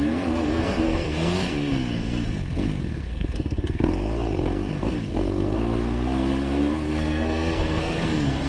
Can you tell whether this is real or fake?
fake